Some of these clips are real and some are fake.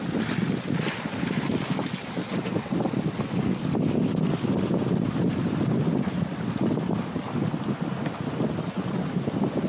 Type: real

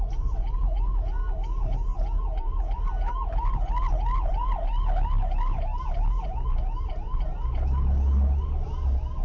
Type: real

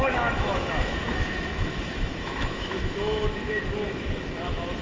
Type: fake